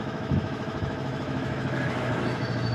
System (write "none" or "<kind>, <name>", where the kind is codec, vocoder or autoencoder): autoencoder, DAC-VAE